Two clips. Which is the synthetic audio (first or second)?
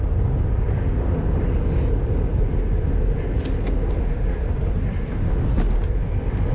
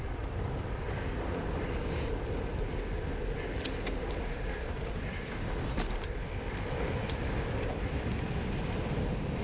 second